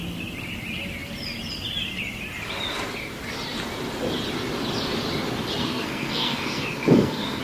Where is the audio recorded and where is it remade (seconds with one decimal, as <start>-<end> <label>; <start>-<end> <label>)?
0.0-5.6 recorded; 5.6-7.4 remade